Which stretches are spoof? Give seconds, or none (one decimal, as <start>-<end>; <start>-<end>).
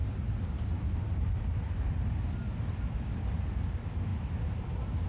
0.0-1.6; 4.1-5.1